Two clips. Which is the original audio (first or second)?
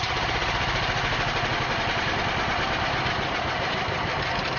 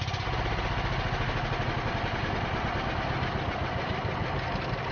second